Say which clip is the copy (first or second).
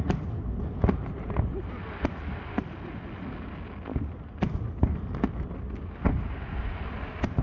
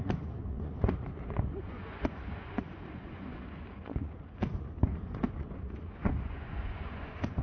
second